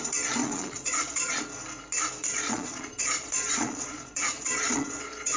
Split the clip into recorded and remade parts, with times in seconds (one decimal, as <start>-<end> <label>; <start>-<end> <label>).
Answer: 0.0-0.4 recorded; 0.4-1.4 remade; 1.4-2.2 recorded; 2.2-5.4 remade